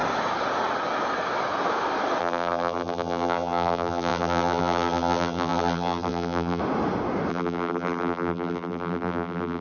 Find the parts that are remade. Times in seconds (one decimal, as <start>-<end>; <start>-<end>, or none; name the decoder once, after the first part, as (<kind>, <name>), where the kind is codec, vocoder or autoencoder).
2.2-6.6 (vocoder, BigVGAN v2); 7.3-9.6